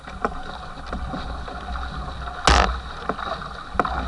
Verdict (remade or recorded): recorded